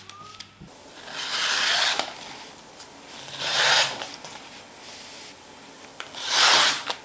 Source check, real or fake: real